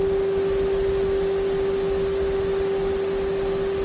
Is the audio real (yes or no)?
yes